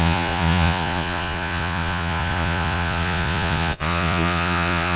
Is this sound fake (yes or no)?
yes